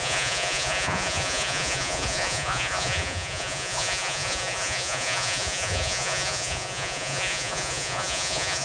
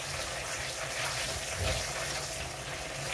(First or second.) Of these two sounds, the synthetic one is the first